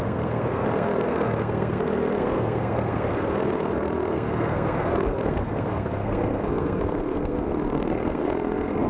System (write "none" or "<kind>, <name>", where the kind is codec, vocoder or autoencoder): codec, SNAC